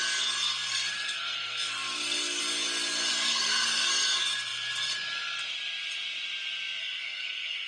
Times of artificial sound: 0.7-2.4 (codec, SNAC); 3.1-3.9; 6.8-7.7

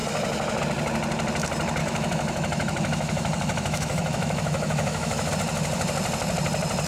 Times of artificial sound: 1.8-5.3 (autoencoder, DAC-VAE)

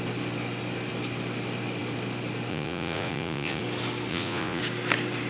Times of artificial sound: 2.5-3.6 (vocoder, Vocos); 4.1-4.6

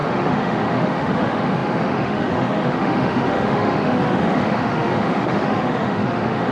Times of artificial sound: 0.0-6.5 (autoencoder, DAC-VAE)

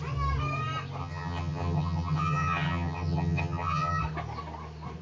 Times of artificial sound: 1.0-4.0 (vocoder, HiFi-GAN)